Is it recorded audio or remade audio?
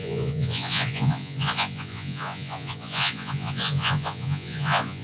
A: remade